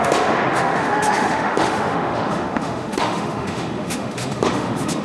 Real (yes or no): no